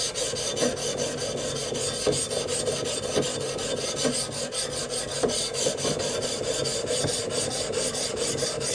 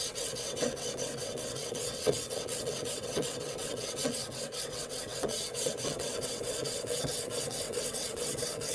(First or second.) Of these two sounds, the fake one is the second